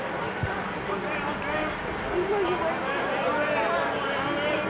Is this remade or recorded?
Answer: recorded